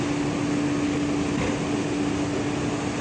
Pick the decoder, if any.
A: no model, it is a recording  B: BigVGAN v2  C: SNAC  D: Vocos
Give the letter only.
A